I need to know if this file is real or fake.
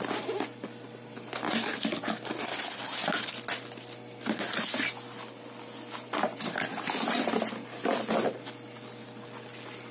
real